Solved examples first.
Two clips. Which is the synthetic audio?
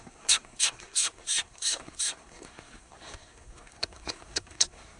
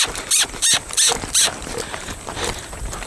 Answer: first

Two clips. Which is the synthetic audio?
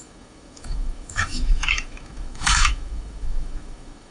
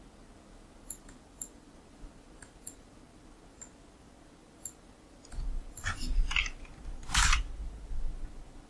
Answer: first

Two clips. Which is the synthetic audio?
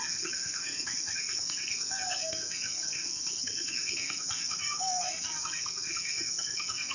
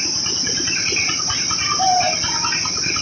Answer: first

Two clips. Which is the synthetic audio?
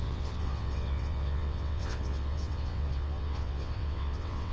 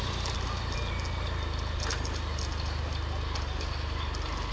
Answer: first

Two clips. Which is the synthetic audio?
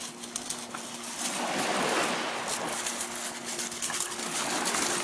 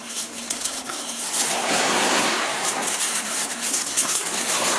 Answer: second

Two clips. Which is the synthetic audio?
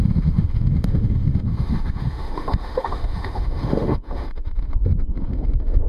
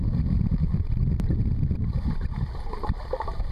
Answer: first